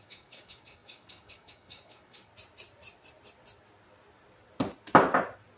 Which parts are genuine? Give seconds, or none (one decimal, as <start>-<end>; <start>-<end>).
2.3-5.6